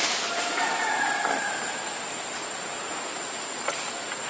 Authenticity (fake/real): real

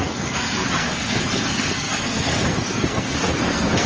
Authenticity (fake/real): fake